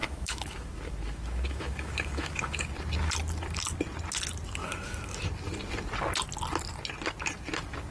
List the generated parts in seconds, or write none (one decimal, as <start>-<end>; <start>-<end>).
0.0-2.7; 4.6-5.2